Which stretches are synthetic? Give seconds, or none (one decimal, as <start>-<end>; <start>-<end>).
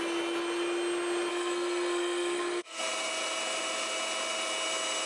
1.3-2.8